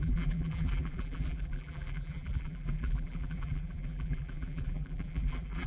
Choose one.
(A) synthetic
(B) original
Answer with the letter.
A